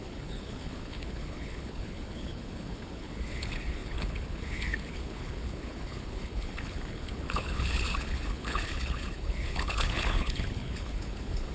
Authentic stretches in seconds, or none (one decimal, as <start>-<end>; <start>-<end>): none